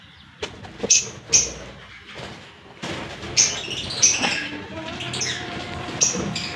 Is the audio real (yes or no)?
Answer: yes